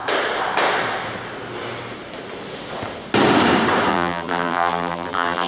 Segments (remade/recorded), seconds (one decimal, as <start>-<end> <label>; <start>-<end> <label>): 0.0-3.9 recorded; 3.9-5.5 remade